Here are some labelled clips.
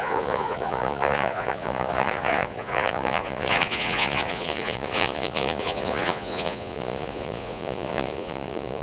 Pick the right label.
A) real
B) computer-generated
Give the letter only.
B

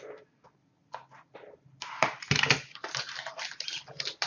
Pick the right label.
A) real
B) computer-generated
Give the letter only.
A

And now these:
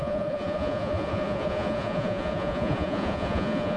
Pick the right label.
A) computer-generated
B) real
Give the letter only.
A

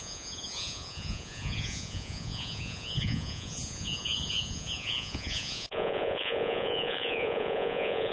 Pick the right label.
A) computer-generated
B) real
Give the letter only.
A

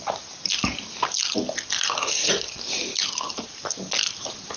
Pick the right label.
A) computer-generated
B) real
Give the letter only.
B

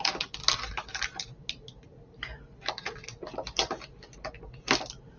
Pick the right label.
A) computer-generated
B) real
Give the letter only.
B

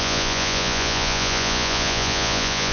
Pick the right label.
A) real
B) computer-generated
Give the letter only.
B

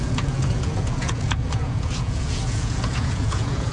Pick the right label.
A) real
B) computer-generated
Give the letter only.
B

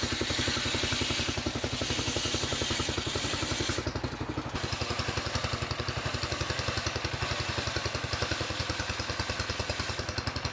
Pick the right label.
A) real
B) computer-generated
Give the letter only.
A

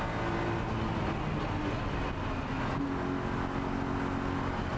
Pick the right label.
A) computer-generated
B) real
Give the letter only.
B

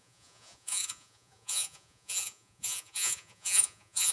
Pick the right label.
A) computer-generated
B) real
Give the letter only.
A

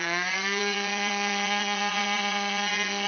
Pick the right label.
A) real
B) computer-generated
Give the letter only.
B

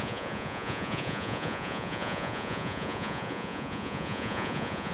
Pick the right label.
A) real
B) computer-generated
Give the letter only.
B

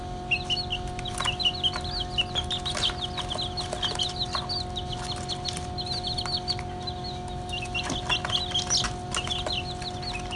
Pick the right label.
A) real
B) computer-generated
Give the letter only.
A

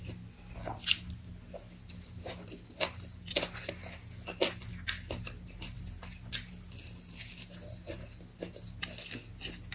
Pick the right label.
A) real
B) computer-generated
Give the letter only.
A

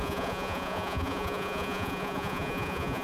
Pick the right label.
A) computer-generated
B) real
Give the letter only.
A